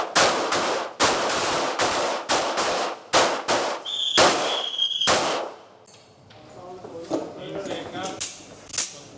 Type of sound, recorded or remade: recorded